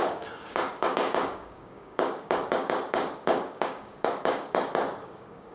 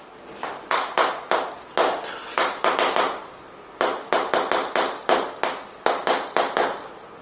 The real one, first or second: second